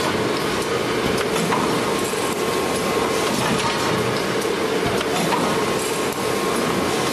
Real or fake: real